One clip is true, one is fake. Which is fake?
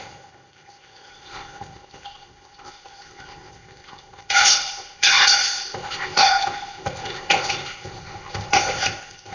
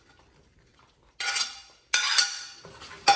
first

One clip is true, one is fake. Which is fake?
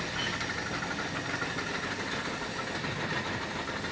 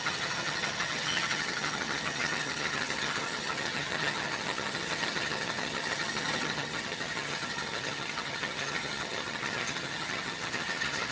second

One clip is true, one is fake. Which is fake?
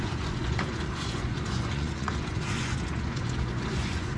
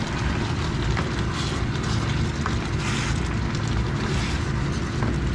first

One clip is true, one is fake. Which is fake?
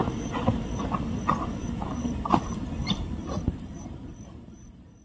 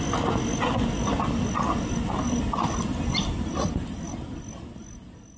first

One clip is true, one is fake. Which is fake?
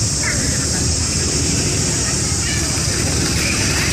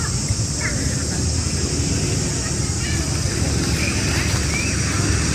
first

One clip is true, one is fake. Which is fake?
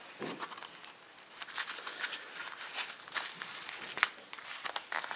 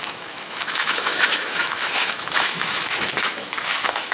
second